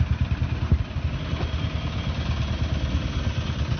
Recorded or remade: recorded